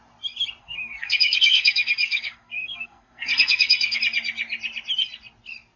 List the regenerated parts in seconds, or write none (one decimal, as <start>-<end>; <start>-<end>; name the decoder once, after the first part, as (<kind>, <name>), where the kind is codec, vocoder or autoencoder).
0.6-4.0 (codec, SNAC)